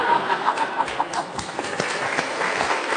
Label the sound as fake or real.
fake